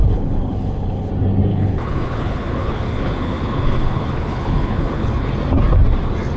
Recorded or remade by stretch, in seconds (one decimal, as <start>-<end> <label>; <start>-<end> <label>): 0.0-1.1 remade; 1.1-1.5 recorded; 1.5-5.3 remade; 5.3-6.4 recorded